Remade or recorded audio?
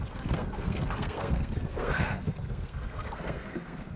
remade